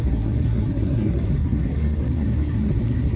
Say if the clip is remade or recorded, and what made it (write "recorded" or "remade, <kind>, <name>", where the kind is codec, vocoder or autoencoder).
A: remade, codec, SNAC